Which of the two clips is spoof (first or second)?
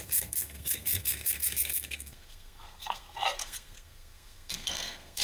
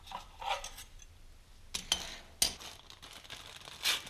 first